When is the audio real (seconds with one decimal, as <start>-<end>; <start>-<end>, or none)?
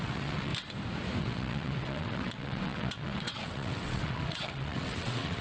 0.5-1.2